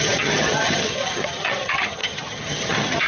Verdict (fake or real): fake